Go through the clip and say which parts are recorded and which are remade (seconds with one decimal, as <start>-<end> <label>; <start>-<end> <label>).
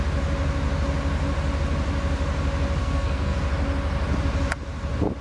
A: 0.0-2.8 recorded; 2.8-3.4 remade; 3.4-5.2 recorded